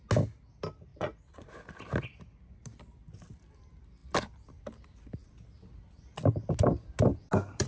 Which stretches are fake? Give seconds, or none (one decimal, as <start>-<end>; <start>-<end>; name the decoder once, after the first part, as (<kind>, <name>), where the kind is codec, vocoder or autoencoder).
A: 0.9-1.5 (vocoder, Vocos)